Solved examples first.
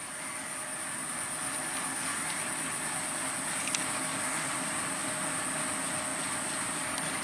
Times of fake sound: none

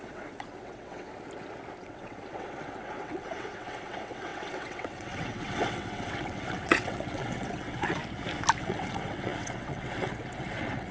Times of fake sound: 0.0-1.1; 1.8-8.0; 8.6-10.9

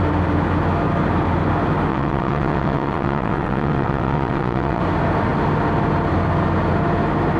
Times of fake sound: 1.9-4.8